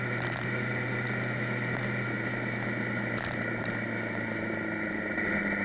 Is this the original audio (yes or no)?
yes